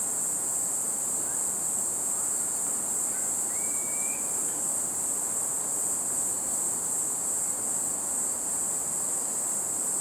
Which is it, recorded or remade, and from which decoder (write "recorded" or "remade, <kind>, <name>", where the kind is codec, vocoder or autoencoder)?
recorded